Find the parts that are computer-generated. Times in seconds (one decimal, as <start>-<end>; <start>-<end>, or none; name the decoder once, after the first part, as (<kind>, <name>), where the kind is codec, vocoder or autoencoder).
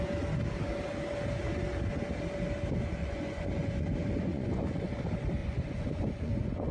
3.0-3.9 (vocoder, Vocos); 4.3-4.9; 5.4-6.7